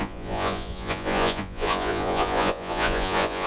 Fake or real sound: fake